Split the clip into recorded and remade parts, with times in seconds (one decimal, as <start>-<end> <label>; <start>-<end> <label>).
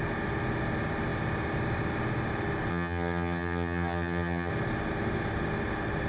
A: 0.0-2.7 recorded; 2.7-4.5 remade; 4.5-6.1 recorded